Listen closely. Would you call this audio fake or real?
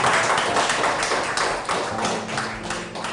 real